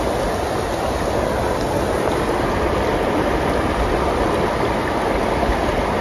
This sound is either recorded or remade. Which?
recorded